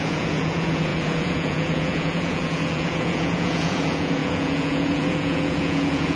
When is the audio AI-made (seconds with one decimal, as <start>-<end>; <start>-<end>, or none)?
0.0-6.2